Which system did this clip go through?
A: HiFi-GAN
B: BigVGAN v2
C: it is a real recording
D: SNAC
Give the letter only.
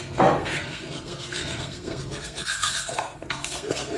D